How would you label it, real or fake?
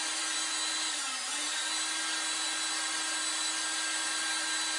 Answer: real